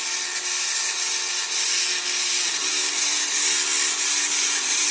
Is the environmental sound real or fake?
real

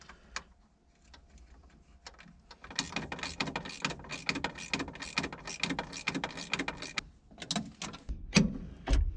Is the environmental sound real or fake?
real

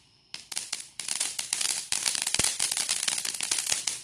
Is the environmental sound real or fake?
fake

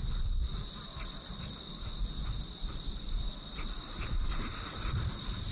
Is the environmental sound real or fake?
fake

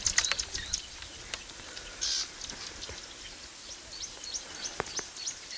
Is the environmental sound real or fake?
real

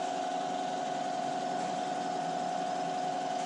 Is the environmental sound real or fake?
real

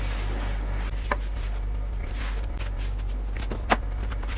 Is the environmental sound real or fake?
real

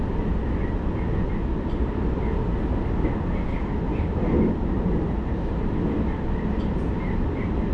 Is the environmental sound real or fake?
real